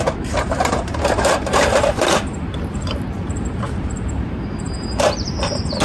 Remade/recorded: remade